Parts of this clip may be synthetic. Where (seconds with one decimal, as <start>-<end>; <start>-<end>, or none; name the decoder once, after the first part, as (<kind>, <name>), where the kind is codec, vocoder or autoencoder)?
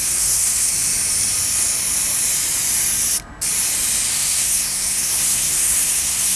0.0-0.7 (codec, SNAC); 4.1-6.4